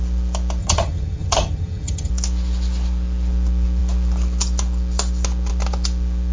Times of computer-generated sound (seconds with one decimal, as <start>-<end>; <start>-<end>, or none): 0.6-2.1